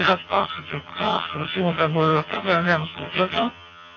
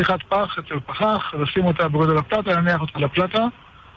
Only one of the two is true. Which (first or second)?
second